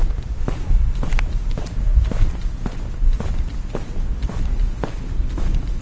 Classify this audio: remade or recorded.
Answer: recorded